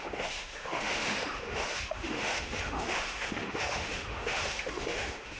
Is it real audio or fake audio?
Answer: fake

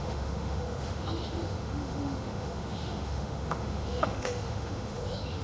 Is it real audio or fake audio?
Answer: fake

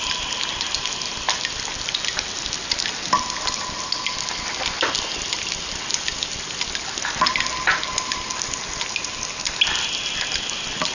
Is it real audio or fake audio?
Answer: real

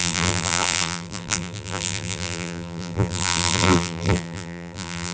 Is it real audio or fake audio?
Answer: fake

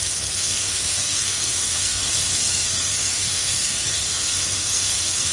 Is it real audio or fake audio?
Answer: fake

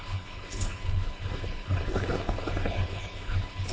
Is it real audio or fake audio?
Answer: fake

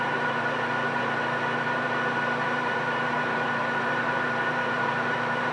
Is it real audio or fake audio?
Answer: fake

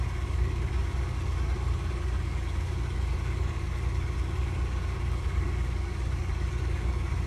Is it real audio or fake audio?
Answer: fake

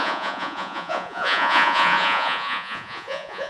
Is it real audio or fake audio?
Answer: fake